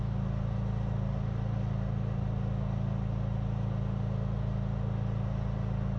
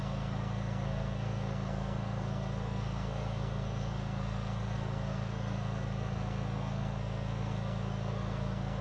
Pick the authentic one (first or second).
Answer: first